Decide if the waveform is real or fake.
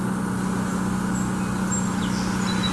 real